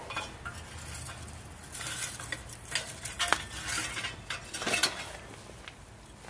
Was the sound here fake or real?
real